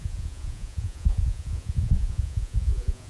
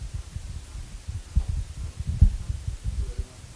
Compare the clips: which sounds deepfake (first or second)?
first